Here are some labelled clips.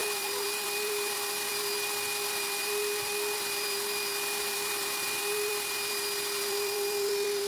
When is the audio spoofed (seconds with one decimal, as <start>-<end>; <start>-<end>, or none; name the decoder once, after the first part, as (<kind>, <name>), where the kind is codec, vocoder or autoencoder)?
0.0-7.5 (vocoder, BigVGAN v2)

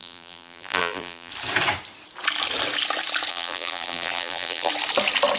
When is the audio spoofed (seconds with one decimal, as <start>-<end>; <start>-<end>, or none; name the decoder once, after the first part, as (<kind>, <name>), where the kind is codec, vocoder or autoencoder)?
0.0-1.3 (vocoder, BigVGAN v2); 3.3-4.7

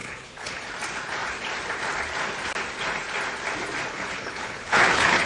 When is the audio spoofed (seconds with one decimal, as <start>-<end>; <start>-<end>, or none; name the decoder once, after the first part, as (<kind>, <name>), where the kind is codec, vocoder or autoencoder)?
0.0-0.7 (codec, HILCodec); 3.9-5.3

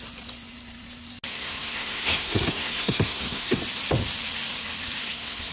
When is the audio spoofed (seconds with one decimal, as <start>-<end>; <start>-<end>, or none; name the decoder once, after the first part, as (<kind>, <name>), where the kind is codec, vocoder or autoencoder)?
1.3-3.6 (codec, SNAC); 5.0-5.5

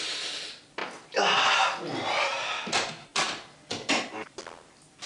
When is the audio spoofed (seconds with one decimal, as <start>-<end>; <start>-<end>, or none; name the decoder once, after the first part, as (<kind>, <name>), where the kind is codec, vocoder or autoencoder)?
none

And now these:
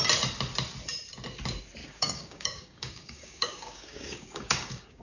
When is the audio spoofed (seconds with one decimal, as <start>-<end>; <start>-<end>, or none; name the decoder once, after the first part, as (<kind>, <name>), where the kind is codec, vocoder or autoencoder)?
1.8-5.0 (codec, DAC)

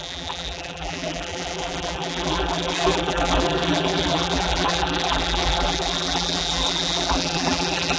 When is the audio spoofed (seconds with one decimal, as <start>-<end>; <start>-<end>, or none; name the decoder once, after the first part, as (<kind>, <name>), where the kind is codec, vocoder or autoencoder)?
0.0-8.0 (vocoder, BigVGAN v2)

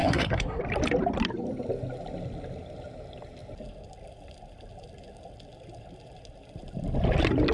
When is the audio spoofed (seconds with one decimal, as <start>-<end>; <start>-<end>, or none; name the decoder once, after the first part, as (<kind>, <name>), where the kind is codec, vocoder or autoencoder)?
0.0-0.6 (codec, SNAC)